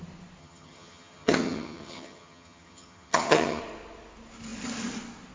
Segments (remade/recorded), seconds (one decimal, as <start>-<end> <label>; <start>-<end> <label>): 0.0-0.4 recorded; 0.4-3.6 remade; 3.6-5.3 recorded